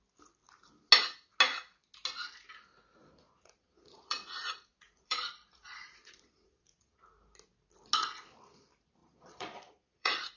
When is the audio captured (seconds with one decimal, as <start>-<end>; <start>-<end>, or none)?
0.0-3.0; 7.0-9.0